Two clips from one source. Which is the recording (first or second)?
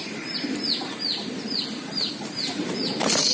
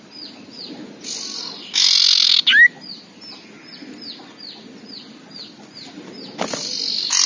second